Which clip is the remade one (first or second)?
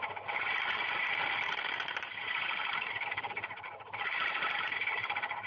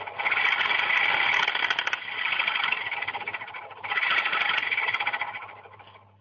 first